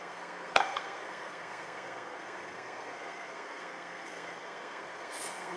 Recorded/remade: remade